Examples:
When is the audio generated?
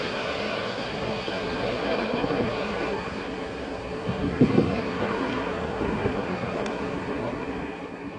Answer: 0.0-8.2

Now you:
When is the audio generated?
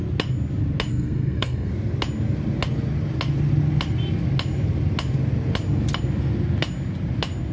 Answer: 0.9-1.7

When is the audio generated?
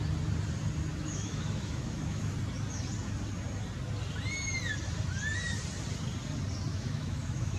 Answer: 0.9-2.3; 6.7-7.6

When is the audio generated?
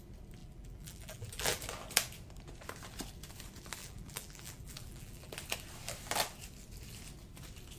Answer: 0.4-1.6; 3.8-5.3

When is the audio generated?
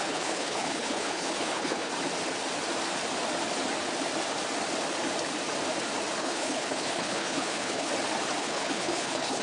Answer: 0.0-1.9; 6.2-7.9; 8.4-9.4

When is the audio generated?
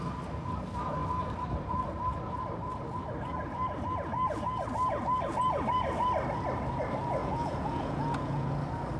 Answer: 7.2-8.5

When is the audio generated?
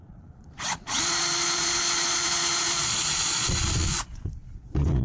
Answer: 0.0-5.0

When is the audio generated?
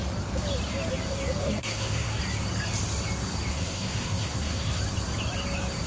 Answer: 1.4-2.2; 3.5-4.8